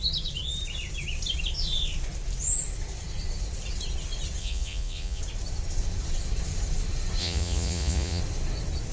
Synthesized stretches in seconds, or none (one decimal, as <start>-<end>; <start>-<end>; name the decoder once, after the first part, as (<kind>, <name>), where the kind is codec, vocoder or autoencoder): 4.4-5.2 (vocoder, Vocos); 7.2-8.2